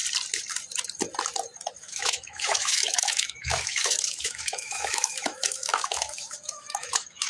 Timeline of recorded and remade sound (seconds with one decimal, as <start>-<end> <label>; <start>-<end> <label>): 0.0-1.8 recorded; 1.8-7.3 remade